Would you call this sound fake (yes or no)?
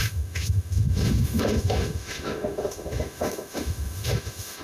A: yes